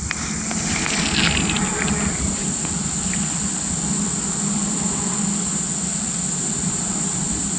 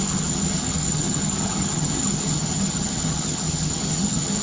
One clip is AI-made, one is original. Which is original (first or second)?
first